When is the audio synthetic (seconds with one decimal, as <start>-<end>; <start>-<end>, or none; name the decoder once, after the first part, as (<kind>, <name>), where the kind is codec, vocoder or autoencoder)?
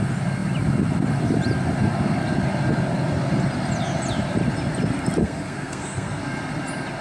5.2-6.2 (codec, SNAC)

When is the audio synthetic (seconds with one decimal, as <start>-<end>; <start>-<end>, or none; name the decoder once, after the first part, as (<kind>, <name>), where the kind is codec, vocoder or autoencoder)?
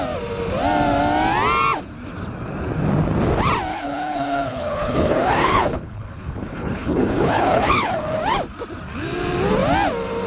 3.7-8.2 (codec, HILCodec)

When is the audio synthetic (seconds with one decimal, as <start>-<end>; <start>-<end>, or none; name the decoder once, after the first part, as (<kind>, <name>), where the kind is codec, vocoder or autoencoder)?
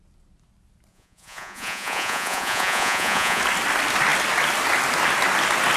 0.9-3.4 (vocoder, Vocos)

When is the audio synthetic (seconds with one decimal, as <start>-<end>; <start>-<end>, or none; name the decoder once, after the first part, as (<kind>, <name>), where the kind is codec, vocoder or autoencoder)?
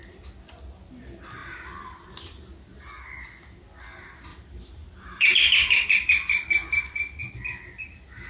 1.4-2.5 (vocoder, BigVGAN v2); 4.3-7.2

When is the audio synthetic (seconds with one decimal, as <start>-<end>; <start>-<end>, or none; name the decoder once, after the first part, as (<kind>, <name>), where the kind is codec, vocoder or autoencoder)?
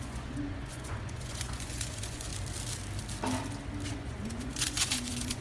0.0-2.3 (vocoder, Vocos); 3.9-5.4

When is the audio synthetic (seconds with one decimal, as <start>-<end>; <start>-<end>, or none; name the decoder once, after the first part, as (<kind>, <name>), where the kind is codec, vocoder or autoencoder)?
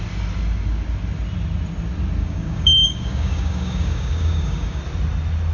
2.2-4.8 (codec, DAC)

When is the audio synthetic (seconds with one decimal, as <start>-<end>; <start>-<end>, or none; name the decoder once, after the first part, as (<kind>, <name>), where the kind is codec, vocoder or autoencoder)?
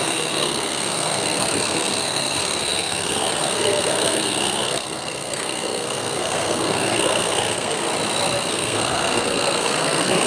0.0-7.8 (codec, SNAC); 8.5-10.3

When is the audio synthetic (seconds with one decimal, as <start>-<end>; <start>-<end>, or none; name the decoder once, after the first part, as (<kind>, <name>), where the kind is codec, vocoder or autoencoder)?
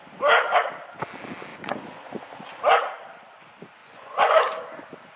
1.5-2.1 (vocoder, Vocos); 3.8-4.4